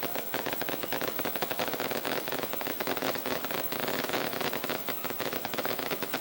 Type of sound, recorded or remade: remade